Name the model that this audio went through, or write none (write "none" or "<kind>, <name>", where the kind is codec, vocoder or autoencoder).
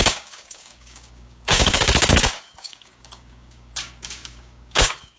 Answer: codec, DAC